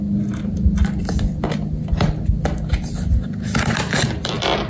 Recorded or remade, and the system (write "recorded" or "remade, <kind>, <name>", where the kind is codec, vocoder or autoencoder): recorded